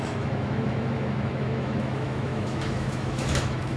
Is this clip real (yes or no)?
no